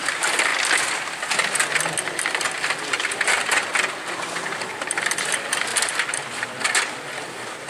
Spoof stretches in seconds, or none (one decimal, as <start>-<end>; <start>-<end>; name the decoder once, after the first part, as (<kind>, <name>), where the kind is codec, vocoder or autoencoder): 5.7-6.6 (vocoder, BigVGAN v2)